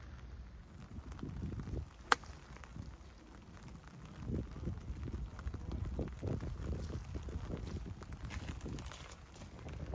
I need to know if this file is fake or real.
real